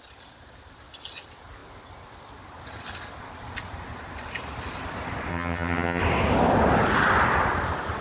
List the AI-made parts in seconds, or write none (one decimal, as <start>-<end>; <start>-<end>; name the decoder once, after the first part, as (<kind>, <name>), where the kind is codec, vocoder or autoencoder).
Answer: 5.3-6.0 (vocoder, HiFi-GAN)